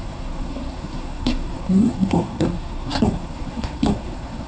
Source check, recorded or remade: remade